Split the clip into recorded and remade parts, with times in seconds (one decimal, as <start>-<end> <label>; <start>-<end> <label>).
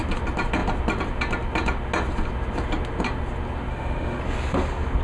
0.0-3.7 recorded; 3.7-4.2 remade; 4.2-5.0 recorded